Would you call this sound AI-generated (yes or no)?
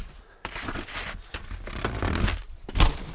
no